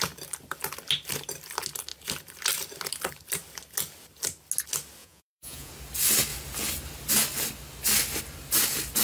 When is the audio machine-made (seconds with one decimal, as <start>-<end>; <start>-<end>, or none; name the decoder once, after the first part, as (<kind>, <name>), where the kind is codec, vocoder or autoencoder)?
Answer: 5.0-5.7 (vocoder, Vocos)